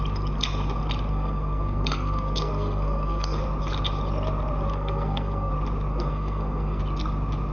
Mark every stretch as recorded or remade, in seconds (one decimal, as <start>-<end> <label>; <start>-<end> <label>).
0.0-1.1 recorded; 1.1-3.4 remade; 3.4-4.7 recorded; 4.7-5.5 remade; 5.5-5.9 recorded; 5.9-6.8 remade; 6.8-7.5 recorded

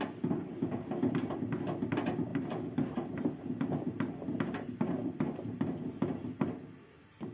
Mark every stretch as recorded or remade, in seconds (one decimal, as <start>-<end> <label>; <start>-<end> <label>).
0.0-2.3 recorded; 2.3-3.1 remade; 3.1-5.0 recorded; 5.0-6.4 remade; 6.4-7.3 recorded

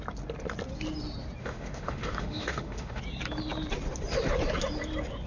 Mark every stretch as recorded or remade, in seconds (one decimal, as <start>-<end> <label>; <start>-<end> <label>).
0.0-1.4 recorded; 1.4-3.0 remade; 3.0-5.3 recorded

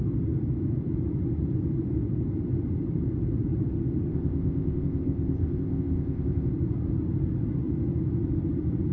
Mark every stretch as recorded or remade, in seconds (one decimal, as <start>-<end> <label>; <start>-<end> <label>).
0.0-4.1 recorded; 4.1-6.5 remade; 6.5-8.9 recorded

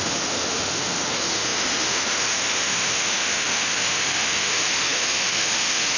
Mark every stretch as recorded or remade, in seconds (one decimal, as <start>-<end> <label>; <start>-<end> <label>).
0.0-6.0 remade

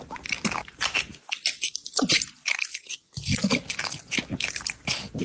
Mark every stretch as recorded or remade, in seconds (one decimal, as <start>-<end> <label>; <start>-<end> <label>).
0.0-3.4 remade; 3.4-4.1 recorded; 4.1-5.2 remade

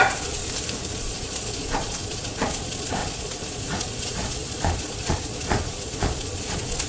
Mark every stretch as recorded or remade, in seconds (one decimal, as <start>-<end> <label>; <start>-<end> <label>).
0.0-0.4 remade; 0.4-0.9 recorded; 0.9-6.9 remade

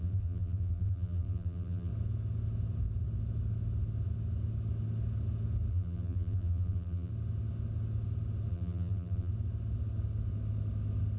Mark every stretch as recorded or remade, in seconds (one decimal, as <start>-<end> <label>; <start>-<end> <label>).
0.0-1.9 remade; 1.9-5.7 recorded; 5.7-7.1 remade; 7.1-8.5 recorded; 8.5-9.3 remade; 9.3-11.2 recorded